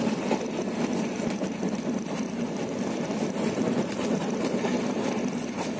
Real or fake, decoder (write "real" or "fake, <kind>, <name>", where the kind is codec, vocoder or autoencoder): real